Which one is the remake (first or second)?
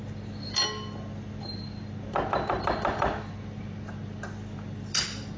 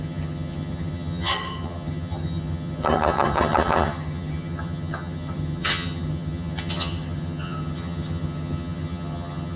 second